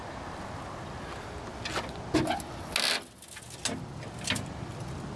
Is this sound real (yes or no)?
yes